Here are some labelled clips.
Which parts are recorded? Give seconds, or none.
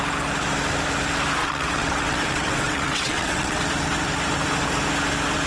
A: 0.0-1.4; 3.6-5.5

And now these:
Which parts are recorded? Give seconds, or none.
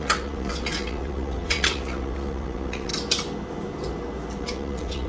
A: 2.9-4.4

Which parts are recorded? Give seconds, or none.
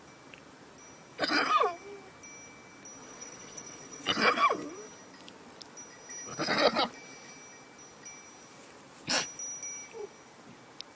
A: 0.0-3.0; 4.2-11.0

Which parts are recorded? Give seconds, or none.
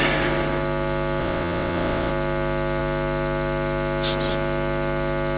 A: 0.0-1.2; 2.1-5.4